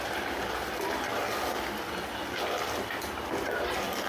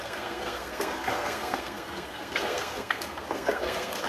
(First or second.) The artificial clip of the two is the second